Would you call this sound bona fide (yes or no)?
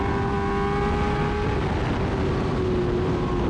yes